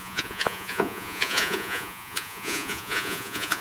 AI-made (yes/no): yes